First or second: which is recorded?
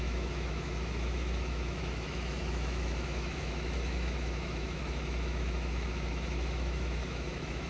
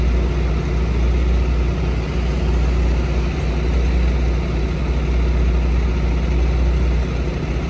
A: second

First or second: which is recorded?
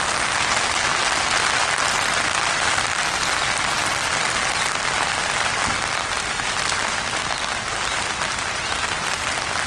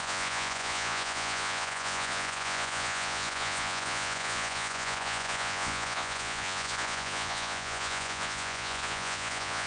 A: first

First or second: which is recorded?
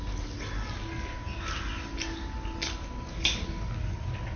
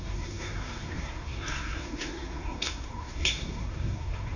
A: first